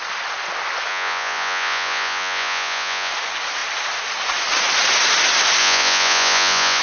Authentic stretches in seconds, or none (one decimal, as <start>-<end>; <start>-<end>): 0.0-0.9; 3.1-5.6